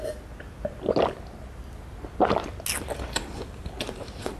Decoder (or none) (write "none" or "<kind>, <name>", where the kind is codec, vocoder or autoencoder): none